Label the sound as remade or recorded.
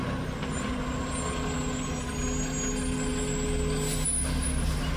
recorded